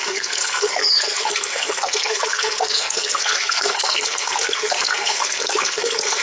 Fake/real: fake